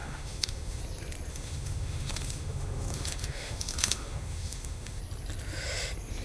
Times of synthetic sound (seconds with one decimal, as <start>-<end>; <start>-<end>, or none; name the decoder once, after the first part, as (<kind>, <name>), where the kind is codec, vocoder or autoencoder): 0.0-0.8 (autoencoder, DAC-VAE); 1.3-5.0